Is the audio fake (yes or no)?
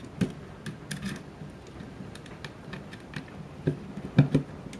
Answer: no